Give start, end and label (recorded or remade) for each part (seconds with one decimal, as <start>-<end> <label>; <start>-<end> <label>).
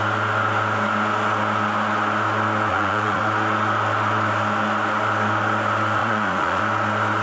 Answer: 0.0-2.7 recorded; 2.7-3.2 remade; 3.2-6.0 recorded; 6.0-6.6 remade; 6.6-7.2 recorded